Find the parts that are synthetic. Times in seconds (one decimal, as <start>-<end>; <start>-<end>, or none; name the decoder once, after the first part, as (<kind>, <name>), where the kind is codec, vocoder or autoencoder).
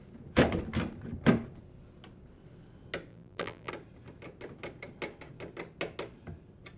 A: 3.1-3.7 (vocoder, BigVGAN v2)